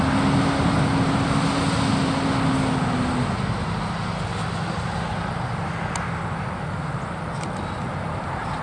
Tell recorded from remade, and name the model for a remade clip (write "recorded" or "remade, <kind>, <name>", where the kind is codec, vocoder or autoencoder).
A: recorded